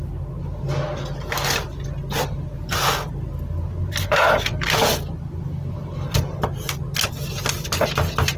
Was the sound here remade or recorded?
recorded